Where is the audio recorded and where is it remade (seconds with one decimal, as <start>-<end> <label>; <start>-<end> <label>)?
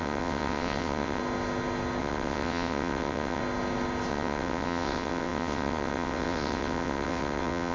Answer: 0.0-1.2 remade; 1.2-2.0 recorded; 2.0-3.4 remade; 3.4-4.1 recorded; 4.1-7.7 remade